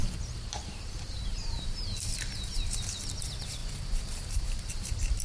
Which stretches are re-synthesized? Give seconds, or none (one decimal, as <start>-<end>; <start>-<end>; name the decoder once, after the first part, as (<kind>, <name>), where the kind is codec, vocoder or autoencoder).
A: 0.0-5.2 (vocoder, BigVGAN v2)